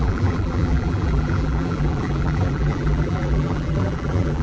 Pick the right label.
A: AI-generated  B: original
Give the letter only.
A